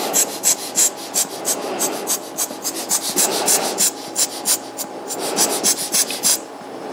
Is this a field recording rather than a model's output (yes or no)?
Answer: yes